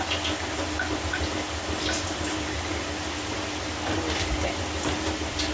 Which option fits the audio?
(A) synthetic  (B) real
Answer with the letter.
B